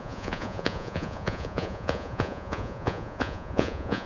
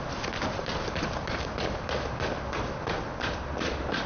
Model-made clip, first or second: first